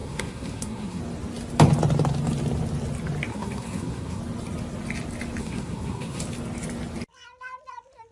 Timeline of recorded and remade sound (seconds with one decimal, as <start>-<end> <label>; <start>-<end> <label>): 0.0-1.0 remade; 1.0-3.3 recorded; 3.3-4.2 remade; 4.2-5.4 recorded; 5.4-6.2 remade; 6.2-8.1 recorded